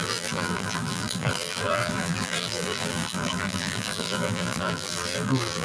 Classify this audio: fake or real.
fake